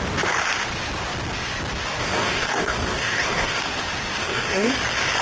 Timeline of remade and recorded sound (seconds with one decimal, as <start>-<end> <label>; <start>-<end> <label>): 0.0-2.0 recorded; 2.0-3.6 remade; 3.6-4.2 recorded; 4.2-4.7 remade; 4.7-5.2 recorded